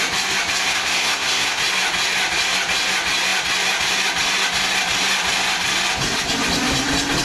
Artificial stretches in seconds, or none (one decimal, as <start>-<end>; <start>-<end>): 0.7-1.6